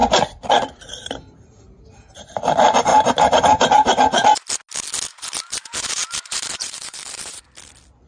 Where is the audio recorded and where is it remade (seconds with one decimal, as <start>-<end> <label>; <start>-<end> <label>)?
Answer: 0.0-2.9 recorded; 2.9-4.4 remade; 4.4-5.1 recorded; 5.1-7.4 remade; 7.4-8.1 recorded